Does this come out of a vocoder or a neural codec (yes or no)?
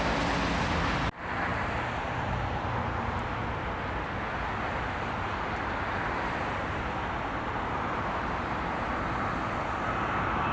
no